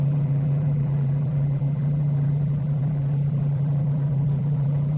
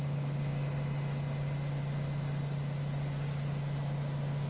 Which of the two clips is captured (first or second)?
second